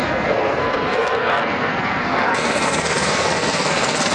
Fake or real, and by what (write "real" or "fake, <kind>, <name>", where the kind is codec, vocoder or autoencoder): fake, codec, SNAC